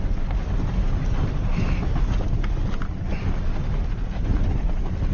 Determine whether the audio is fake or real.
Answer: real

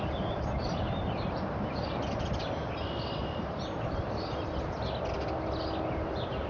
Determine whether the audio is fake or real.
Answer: fake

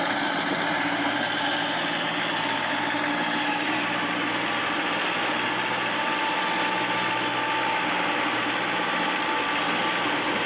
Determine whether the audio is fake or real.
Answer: real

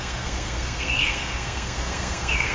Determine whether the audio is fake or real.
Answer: fake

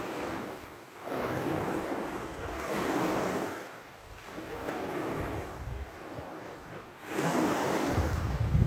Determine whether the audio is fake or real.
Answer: fake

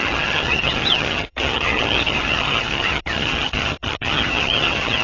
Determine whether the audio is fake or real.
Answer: fake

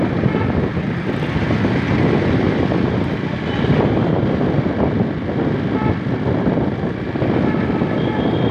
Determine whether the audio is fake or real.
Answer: real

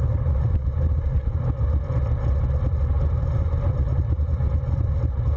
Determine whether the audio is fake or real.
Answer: real